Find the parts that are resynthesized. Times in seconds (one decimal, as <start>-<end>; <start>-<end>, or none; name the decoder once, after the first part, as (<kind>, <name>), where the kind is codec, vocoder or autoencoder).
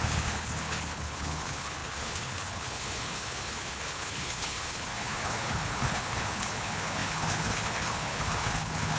0.0-9.0 (codec, HILCodec)